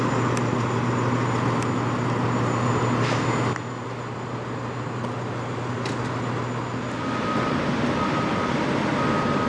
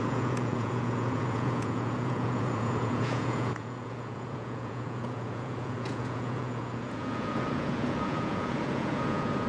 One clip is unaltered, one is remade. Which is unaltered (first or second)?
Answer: first